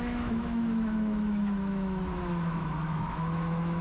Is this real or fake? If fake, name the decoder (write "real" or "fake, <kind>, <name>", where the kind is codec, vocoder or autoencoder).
fake, autoencoder, DAC-VAE